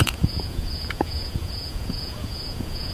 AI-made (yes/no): yes